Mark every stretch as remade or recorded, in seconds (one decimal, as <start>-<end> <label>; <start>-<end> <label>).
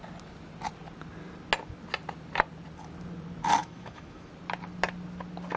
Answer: 0.0-3.6 recorded; 3.6-4.3 remade; 4.3-5.6 recorded